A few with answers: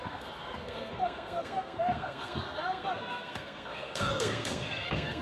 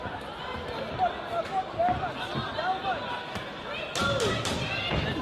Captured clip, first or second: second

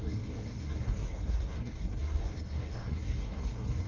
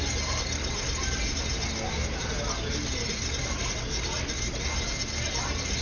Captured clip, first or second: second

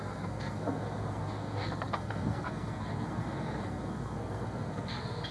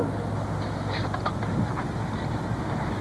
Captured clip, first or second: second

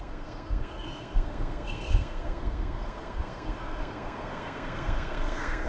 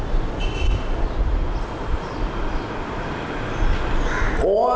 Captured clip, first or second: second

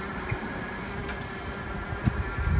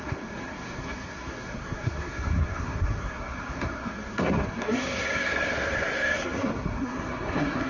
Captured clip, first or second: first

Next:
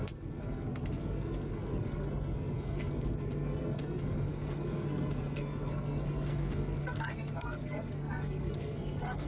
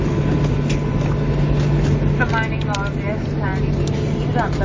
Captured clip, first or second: second